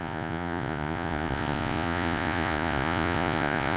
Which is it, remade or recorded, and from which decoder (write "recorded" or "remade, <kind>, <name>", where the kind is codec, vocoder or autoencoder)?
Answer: remade, vocoder, Vocos